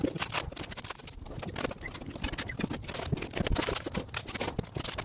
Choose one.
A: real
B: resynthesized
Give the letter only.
A